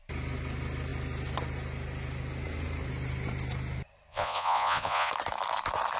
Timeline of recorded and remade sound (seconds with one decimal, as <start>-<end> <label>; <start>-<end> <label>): 0.0-4.1 recorded; 4.1-5.1 remade; 5.1-6.0 recorded